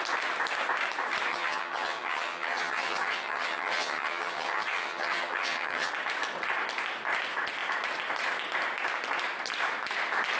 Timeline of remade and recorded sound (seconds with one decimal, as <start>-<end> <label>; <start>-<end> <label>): 0.0-1.3 recorded; 1.3-5.9 remade; 5.9-10.4 recorded